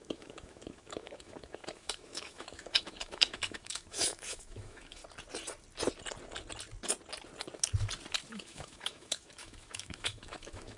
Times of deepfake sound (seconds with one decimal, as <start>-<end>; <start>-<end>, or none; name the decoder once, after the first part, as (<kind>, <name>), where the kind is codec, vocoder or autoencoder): 0.0-5.0 (autoencoder, DAC-VAE); 8.3-10.8